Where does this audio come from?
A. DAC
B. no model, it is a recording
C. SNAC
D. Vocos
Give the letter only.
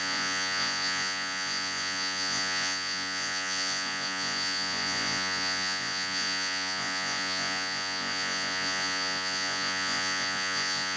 D